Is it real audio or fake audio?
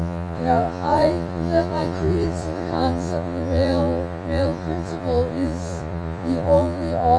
fake